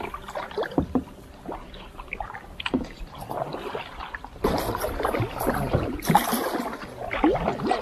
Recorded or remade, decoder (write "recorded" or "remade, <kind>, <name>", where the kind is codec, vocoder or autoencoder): remade, vocoder, BigVGAN v2